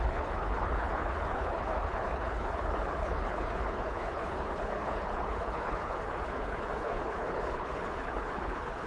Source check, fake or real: fake